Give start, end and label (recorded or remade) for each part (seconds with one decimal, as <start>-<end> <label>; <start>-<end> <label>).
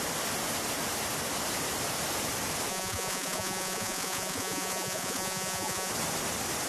0.0-2.7 recorded; 2.7-5.9 remade; 5.9-6.7 recorded